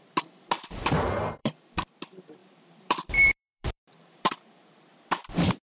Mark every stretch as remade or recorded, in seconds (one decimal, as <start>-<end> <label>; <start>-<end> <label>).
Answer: 0.0-1.4 recorded; 1.4-1.9 remade; 1.9-2.4 recorded; 2.4-4.4 remade; 4.4-5.7 recorded